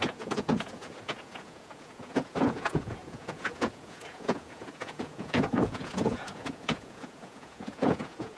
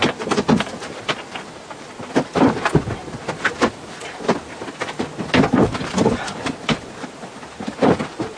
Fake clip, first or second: first